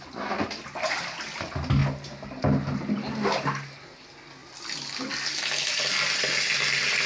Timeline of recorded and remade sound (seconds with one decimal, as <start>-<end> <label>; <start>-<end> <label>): 0.0-7.1 recorded

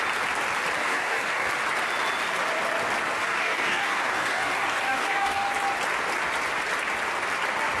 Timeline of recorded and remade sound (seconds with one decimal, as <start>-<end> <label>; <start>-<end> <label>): 0.0-0.8 recorded; 0.8-1.5 remade; 1.5-3.2 recorded; 3.2-5.5 remade; 5.5-7.8 recorded

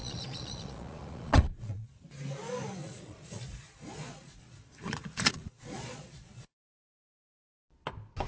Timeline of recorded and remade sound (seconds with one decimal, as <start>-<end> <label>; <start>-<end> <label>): 0.0-2.0 remade; 2.0-2.8 recorded; 2.8-6.5 remade; 6.5-8.3 recorded

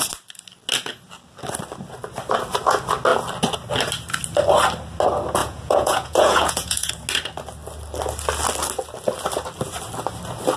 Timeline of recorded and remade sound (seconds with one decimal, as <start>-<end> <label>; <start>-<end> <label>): 0.0-5.4 recorded; 5.4-6.9 remade; 6.9-10.6 recorded

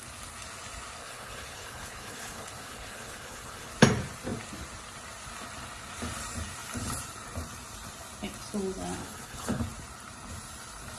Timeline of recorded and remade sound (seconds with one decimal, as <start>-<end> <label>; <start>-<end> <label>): 0.0-1.0 recorded; 1.0-3.7 remade; 3.7-9.0 recorded; 9.0-9.6 remade; 9.6-11.0 recorded

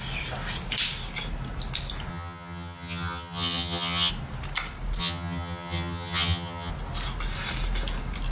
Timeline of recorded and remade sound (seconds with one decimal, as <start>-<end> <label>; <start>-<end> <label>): 0.0-2.1 recorded; 2.1-4.1 remade; 4.1-5.0 recorded; 5.0-6.7 remade; 6.7-8.3 recorded